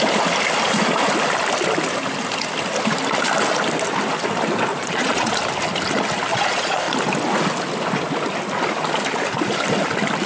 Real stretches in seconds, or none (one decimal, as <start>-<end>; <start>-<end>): 0.0-4.7; 5.3-6.3; 6.8-10.3